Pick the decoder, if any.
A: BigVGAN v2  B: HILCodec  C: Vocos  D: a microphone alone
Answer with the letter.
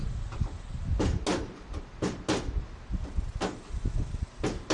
D